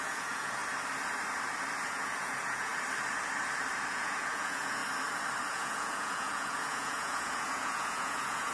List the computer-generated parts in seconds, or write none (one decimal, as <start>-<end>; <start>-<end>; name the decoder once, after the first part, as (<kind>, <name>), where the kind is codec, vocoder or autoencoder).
0.0-0.6 (vocoder, Vocos); 1.9-2.7; 3.9-4.8; 5.5-8.5